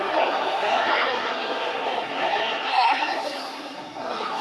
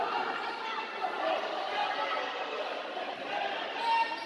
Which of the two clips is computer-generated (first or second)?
first